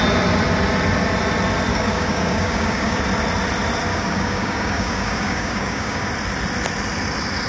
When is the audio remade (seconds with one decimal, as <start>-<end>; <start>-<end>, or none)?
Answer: 1.7-3.0; 3.9-6.1